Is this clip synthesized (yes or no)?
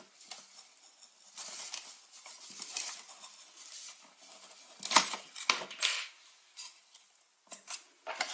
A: no